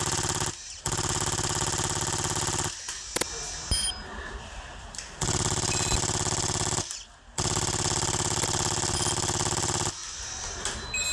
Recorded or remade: recorded